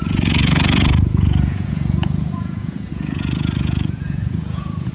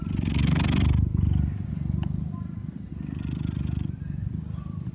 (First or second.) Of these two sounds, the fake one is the first